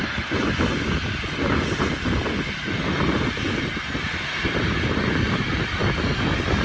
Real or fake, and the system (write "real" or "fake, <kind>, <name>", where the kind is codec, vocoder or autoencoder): real